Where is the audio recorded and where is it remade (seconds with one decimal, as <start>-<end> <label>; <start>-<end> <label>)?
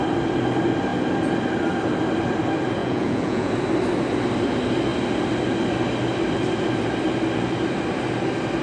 0.0-2.8 recorded; 2.8-3.5 remade; 3.5-8.6 recorded